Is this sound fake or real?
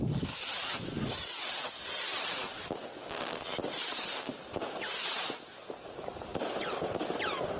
real